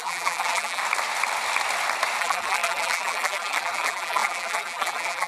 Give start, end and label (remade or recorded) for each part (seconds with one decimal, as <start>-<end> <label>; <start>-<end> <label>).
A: 0.0-0.8 remade; 0.8-2.2 recorded; 2.2-5.3 remade